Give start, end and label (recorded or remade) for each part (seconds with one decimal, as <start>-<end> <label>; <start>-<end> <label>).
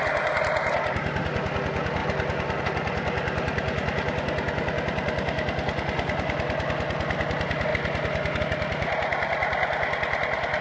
0.0-10.6 recorded